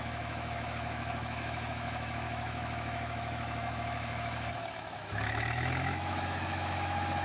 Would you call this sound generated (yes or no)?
yes